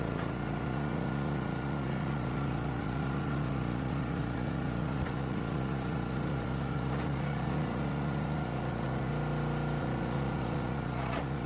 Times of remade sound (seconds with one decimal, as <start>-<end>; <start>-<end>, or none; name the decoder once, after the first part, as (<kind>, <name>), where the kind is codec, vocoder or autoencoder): 0.0-9.1 (vocoder, Vocos); 9.8-11.5